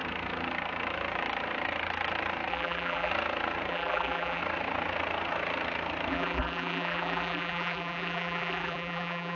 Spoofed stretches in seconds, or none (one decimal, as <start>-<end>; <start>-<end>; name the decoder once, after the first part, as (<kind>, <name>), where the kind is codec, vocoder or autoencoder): 2.5-3.1 (vocoder, BigVGAN v2); 3.7-4.4; 6.1-9.3